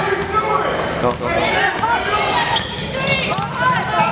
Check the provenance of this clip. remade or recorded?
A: recorded